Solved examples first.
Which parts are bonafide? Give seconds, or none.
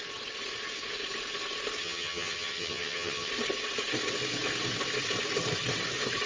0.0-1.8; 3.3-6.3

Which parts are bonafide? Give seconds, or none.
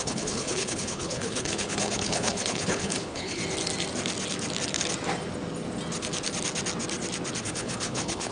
3.4-7.4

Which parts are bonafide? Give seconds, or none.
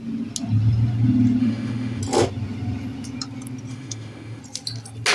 0.0-1.4; 2.0-3.7; 4.4-5.1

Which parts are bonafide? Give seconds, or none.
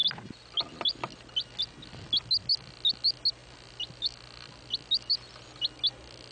0.0-6.3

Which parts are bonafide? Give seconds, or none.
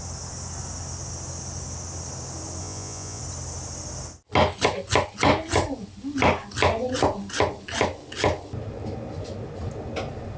0.0-2.6; 3.2-10.4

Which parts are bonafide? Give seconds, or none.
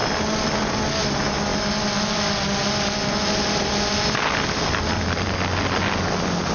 0.0-6.5